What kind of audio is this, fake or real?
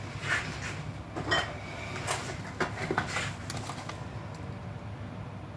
real